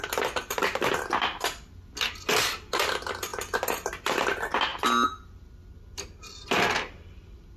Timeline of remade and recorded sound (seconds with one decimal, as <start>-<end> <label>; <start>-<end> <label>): 0.0-7.6 recorded